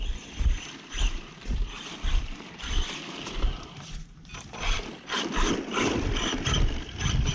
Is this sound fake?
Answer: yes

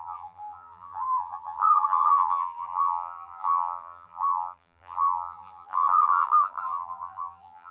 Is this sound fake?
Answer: yes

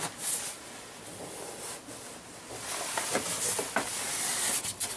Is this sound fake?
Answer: no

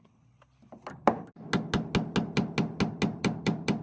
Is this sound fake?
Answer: no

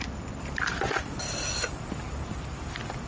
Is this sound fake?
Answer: no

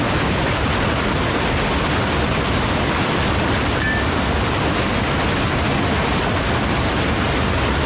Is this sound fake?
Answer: no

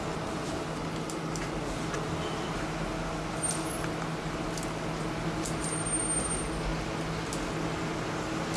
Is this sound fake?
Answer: no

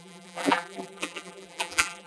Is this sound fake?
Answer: yes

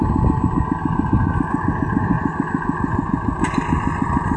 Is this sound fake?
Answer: no